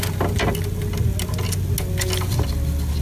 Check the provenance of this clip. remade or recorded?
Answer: recorded